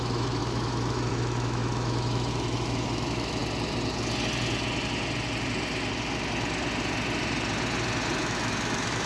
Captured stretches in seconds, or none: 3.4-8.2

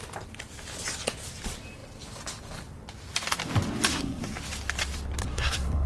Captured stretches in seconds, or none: 0.0-3.9; 4.4-5.2

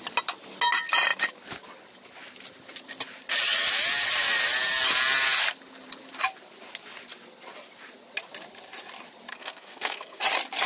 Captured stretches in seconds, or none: 0.0-9.3; 10.2-10.7

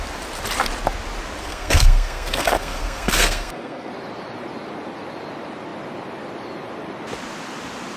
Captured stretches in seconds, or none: 0.0-1.4; 3.9-8.0

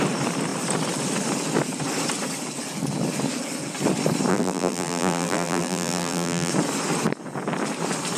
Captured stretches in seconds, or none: 0.0-4.3; 6.5-8.2